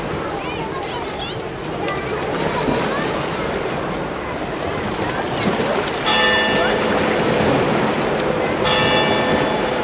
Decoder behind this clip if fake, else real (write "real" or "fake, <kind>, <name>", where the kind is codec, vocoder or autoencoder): real